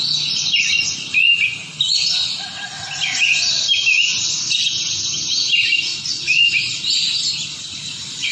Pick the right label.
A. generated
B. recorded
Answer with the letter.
B